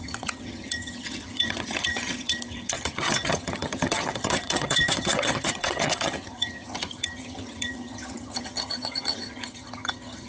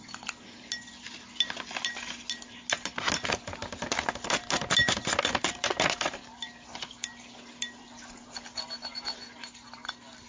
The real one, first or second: second